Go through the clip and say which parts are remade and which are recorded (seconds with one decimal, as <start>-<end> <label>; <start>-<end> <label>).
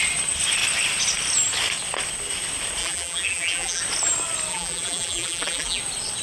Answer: 0.0-2.8 recorded; 2.8-3.8 remade; 3.8-4.5 recorded; 4.5-5.8 remade; 5.8-6.2 recorded